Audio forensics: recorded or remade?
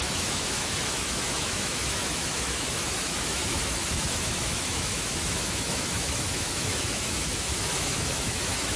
remade